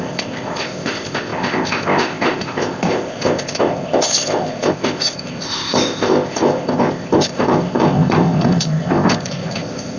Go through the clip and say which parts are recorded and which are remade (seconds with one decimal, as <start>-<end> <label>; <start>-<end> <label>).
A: 0.0-10.0 remade